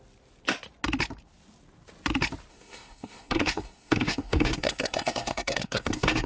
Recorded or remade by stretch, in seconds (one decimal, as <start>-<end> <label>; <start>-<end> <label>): 0.0-2.5 recorded; 2.5-6.3 remade